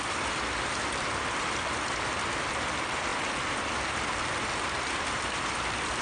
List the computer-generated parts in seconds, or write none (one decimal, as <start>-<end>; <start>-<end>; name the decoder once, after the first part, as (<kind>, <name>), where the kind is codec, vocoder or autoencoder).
none